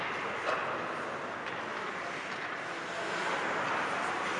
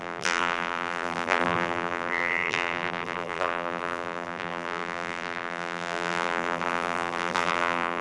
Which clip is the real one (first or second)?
first